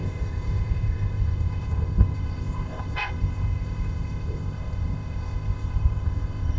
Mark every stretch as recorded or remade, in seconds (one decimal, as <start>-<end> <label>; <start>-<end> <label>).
0.0-6.6 remade